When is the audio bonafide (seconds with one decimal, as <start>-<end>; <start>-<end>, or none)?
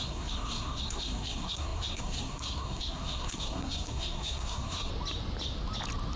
4.9-6.2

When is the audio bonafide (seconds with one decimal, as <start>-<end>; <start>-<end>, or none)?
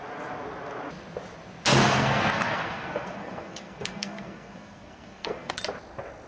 0.0-1.7; 5.5-6.3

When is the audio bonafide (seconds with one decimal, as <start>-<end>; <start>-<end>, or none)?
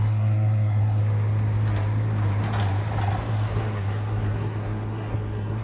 1.0-3.3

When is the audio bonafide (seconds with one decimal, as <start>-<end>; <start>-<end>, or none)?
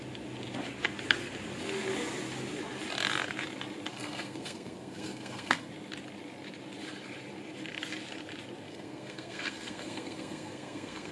0.0-3.9; 5.7-8.7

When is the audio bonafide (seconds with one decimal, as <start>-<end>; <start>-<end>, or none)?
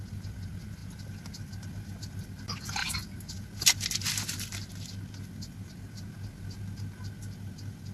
0.0-7.9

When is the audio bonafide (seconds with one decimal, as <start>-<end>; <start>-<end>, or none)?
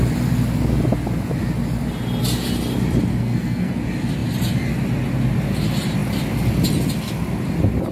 0.0-3.1; 3.7-7.9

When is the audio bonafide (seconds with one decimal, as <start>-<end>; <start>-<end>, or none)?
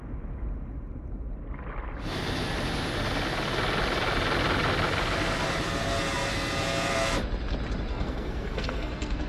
0.0-7.9